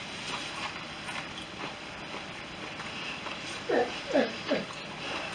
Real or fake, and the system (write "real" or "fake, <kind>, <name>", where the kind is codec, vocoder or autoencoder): real